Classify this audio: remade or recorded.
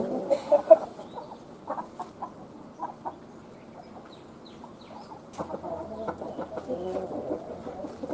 recorded